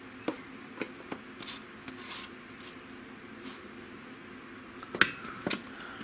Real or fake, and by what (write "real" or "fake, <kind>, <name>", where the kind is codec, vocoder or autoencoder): real